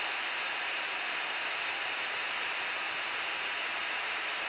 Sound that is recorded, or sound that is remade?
remade